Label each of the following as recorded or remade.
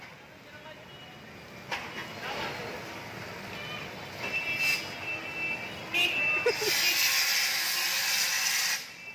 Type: recorded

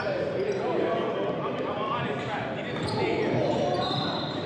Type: remade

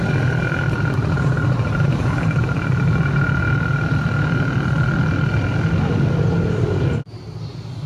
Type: recorded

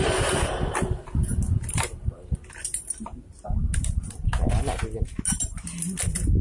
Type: recorded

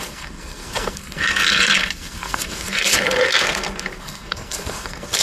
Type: remade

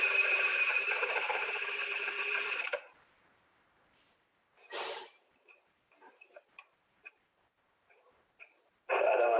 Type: remade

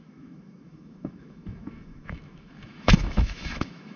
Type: remade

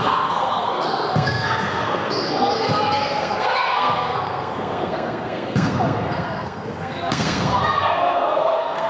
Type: remade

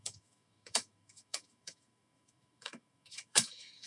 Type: remade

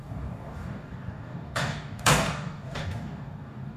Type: remade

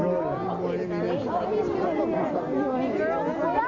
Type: recorded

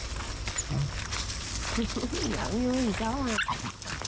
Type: recorded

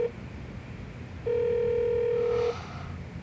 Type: recorded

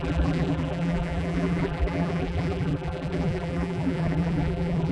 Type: remade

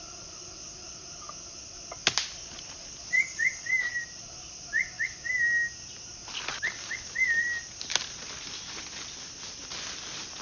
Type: recorded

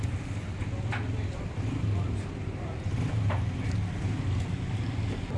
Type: recorded